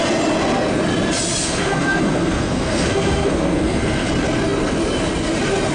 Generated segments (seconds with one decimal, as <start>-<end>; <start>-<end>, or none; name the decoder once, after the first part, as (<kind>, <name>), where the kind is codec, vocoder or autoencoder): 1.4-4.1 (codec, SNAC)